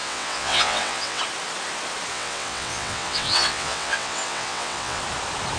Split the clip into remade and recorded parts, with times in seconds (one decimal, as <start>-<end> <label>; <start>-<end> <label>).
0.0-1.2 remade; 1.2-2.1 recorded; 2.1-5.0 remade; 5.0-5.6 recorded